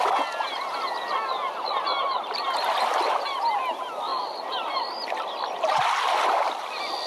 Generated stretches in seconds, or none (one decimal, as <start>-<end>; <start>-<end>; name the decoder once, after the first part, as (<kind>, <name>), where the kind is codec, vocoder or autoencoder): 4.1-6.0 (vocoder, BigVGAN v2)